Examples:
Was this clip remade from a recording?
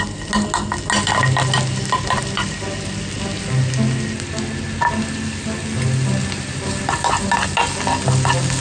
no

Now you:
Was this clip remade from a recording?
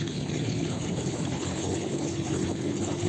yes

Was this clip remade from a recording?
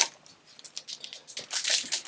no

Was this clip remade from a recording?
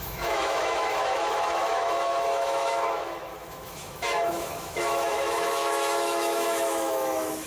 yes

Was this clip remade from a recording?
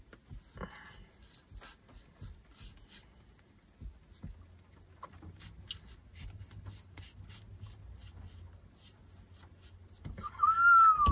no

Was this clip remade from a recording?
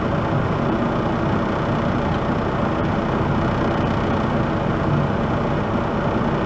no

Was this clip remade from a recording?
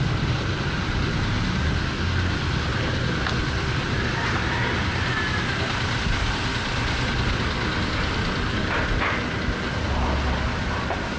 no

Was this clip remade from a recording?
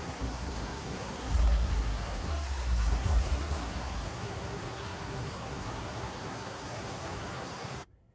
yes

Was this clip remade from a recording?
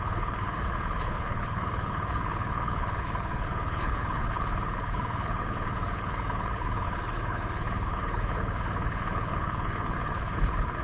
yes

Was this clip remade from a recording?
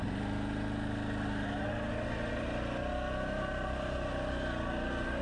no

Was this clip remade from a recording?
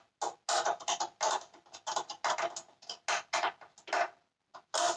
no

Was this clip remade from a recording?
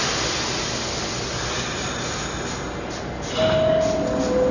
no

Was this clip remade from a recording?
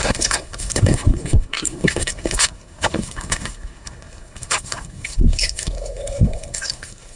yes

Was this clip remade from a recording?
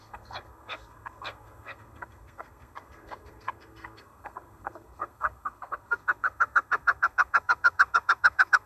yes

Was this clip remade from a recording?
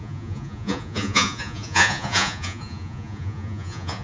yes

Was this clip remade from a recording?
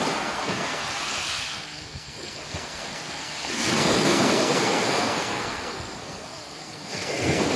yes